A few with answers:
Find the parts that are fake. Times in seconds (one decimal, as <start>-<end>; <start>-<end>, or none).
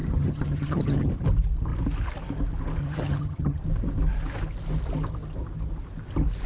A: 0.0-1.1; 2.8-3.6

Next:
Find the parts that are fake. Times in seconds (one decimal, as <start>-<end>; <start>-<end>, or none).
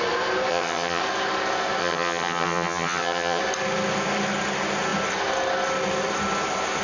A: 0.5-1.0; 1.8-3.4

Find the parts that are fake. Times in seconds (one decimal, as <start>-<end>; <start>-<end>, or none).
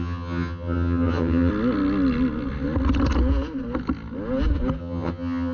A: 0.0-1.5; 4.8-5.5